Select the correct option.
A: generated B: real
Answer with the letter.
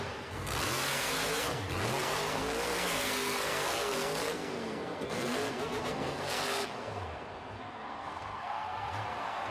A